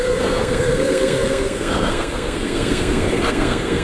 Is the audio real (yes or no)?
no